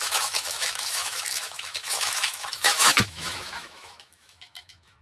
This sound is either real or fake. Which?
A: fake